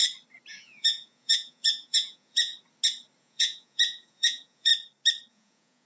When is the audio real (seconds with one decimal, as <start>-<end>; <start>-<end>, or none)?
0.0-0.6; 2.5-3.2; 4.7-5.3